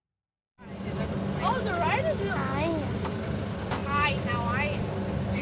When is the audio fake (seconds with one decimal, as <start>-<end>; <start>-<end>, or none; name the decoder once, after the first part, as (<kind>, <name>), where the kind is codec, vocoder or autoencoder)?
none